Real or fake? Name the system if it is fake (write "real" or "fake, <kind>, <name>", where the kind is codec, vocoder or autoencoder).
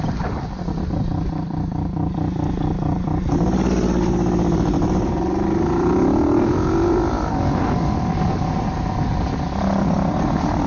real